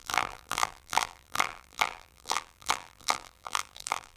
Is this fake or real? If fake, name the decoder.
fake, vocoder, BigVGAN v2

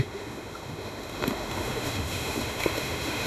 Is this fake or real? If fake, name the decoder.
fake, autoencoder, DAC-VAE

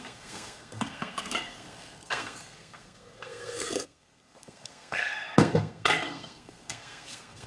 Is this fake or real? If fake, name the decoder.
fake, codec, SNAC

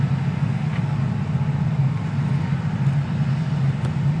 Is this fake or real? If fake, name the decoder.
real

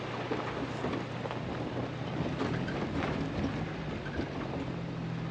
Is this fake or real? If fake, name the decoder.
real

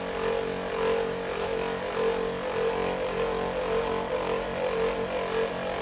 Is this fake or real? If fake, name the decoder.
real